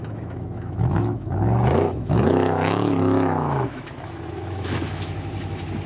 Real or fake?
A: fake